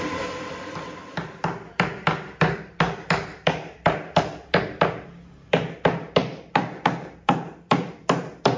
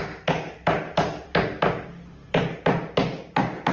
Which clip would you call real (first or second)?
second